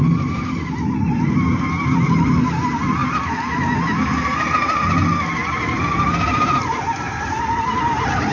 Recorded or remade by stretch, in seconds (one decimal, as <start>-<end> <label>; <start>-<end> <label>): 0.0-8.3 recorded